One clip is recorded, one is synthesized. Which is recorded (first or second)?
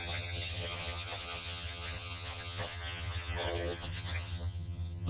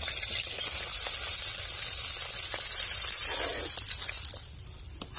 second